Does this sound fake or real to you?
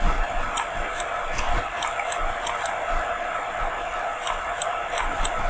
real